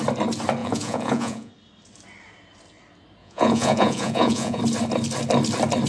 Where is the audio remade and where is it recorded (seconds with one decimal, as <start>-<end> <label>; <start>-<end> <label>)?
0.0-0.6 recorded; 0.6-1.5 remade; 1.5-3.2 recorded; 3.2-4.6 remade; 4.6-5.9 recorded